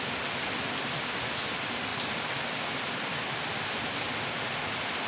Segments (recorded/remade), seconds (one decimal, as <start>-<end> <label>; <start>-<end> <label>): 0.0-5.1 recorded